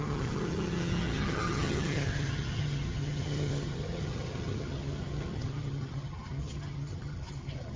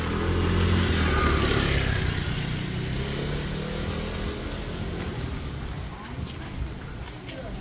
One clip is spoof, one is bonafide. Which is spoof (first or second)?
first